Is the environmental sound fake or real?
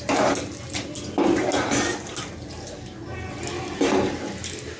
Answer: real